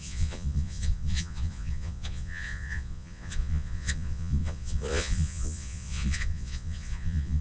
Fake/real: fake